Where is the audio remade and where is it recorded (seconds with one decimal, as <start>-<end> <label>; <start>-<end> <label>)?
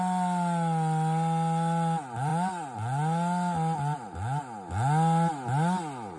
0.0-6.2 recorded